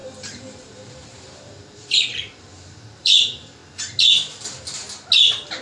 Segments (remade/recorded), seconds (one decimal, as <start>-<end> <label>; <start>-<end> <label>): 0.0-3.6 remade; 3.6-5.6 recorded